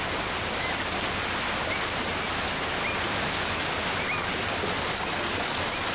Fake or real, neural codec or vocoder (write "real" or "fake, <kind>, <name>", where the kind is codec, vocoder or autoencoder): real